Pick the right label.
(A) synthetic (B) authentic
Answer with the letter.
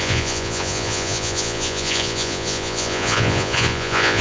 A